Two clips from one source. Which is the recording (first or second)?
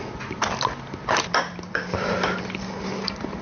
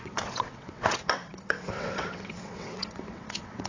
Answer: first